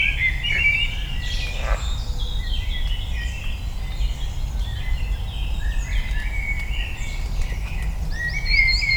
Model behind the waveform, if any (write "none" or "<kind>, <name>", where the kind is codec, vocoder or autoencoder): none